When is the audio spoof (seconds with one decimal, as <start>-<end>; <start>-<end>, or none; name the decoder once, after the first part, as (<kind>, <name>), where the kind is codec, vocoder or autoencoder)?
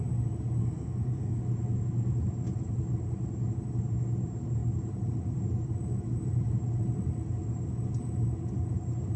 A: 0.6-1.4 (codec, SNAC)